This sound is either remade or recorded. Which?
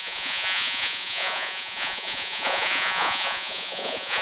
remade